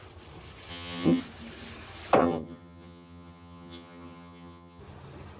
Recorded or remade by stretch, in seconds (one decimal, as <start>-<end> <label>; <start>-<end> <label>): 0.0-0.7 recorded; 0.7-1.2 remade; 1.2-2.2 recorded; 2.2-4.8 remade; 4.8-5.4 recorded